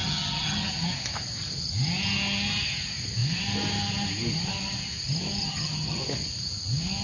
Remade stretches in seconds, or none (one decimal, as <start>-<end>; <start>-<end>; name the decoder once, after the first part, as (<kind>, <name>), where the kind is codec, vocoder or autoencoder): 0.0-0.7 (vocoder, HiFi-GAN); 5.4-6.0